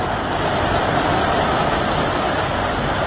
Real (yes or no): yes